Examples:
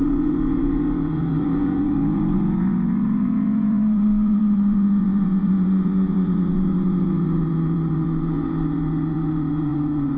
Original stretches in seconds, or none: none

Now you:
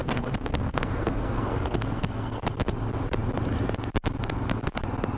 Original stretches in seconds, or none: 2.4-5.2

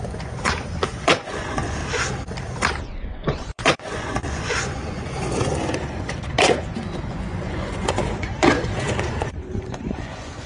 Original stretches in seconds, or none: 1.8-2.8

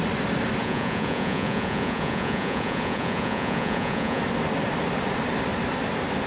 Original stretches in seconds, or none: 0.0-0.6; 4.2-6.3